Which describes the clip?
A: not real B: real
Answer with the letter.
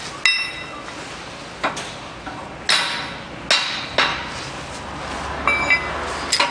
B